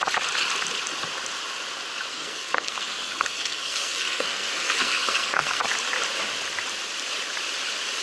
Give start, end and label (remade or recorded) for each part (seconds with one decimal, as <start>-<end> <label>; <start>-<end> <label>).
0.0-2.1 recorded; 2.1-5.6 remade; 5.6-8.0 recorded